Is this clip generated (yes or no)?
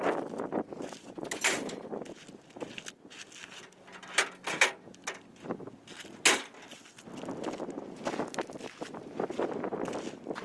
no